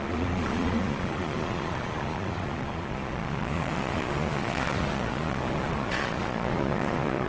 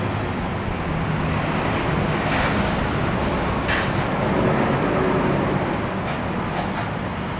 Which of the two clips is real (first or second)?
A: second